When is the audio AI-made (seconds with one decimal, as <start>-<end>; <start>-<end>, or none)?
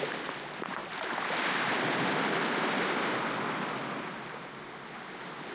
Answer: none